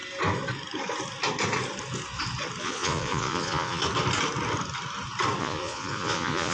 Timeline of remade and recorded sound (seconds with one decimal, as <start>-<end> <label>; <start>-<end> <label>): 0.0-2.6 recorded; 2.6-3.8 remade; 3.8-5.4 recorded; 5.4-6.5 remade